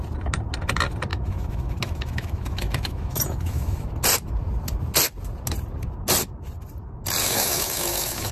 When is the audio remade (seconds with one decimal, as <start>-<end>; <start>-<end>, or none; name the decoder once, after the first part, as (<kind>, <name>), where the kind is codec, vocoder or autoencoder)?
1.1-3.9 (autoencoder, DAC-VAE); 7.2-8.3